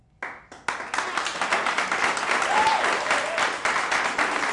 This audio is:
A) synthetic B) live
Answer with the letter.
B